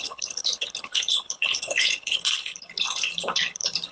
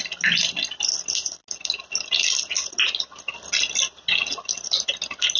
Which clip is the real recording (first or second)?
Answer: second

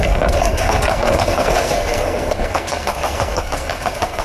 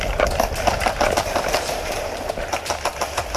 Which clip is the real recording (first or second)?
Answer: second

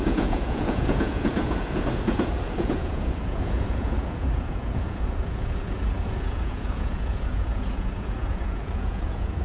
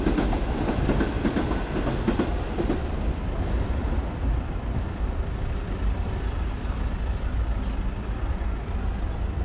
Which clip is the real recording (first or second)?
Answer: second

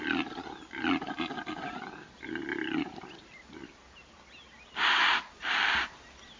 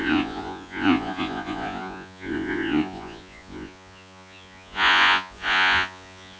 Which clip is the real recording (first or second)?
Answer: first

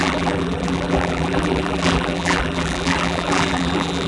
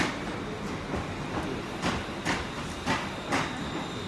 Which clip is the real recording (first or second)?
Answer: second